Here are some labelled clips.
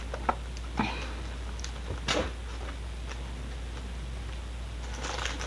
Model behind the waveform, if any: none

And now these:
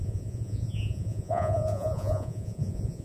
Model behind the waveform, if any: vocoder, Vocos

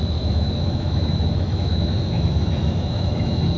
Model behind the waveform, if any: autoencoder, DAC-VAE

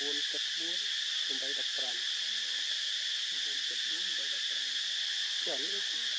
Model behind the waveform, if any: none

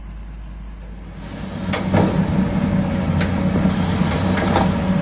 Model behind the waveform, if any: none